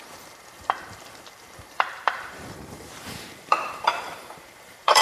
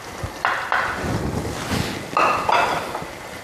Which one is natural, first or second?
second